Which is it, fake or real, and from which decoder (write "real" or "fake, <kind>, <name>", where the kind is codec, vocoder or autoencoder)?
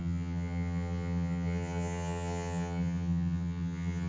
fake, vocoder, HiFi-GAN